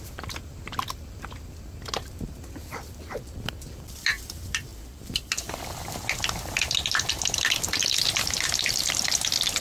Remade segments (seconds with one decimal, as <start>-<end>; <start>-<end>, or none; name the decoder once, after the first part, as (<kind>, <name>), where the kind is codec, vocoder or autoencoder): 0.0-9.6 (vocoder, BigVGAN v2)